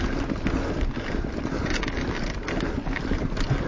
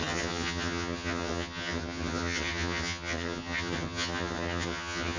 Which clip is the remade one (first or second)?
second